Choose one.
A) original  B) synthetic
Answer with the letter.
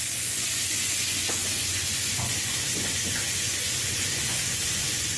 B